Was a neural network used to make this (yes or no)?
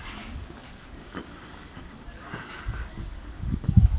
yes